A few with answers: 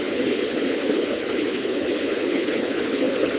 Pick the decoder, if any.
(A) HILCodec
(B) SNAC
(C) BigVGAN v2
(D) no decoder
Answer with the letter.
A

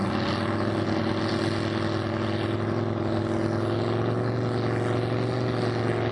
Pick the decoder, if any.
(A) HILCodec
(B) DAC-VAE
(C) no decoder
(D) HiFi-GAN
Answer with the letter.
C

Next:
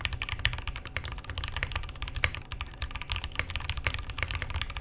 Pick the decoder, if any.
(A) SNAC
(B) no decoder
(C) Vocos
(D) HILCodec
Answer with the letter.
B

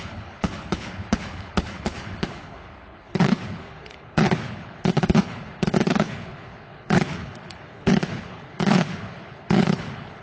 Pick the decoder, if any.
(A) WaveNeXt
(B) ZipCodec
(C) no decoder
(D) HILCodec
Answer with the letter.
D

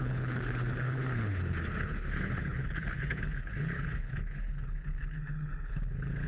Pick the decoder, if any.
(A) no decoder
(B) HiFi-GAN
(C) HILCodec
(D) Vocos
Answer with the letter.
C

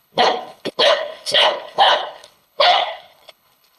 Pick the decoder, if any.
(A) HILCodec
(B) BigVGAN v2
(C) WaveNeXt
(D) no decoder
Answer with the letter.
A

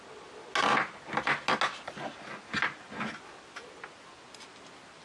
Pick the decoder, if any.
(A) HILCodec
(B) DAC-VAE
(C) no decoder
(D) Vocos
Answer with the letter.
C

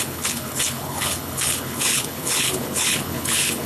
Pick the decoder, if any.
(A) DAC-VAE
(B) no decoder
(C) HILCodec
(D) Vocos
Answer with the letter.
C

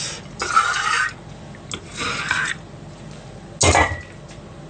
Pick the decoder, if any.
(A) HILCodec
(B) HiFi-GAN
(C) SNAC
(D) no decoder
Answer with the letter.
D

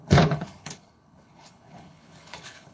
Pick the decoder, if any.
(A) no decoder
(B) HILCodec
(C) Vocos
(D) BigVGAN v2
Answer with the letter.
B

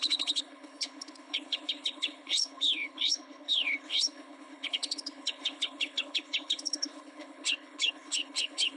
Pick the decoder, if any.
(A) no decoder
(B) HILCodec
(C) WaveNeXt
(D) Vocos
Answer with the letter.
B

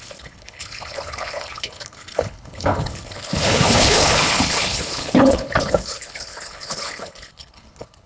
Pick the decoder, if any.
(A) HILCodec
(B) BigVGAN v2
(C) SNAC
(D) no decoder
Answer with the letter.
A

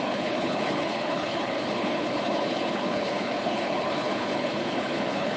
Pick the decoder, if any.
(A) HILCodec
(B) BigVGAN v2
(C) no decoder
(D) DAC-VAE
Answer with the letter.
A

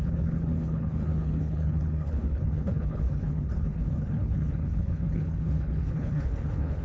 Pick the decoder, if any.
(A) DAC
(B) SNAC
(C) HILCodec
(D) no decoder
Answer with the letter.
C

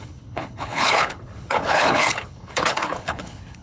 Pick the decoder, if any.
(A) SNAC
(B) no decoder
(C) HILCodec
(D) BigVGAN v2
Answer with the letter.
C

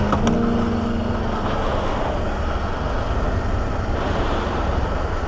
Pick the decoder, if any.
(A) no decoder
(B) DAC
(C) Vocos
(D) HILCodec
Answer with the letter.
A